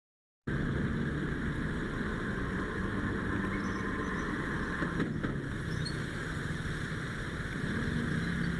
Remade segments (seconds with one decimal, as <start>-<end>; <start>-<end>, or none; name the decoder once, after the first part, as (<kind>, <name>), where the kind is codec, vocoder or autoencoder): none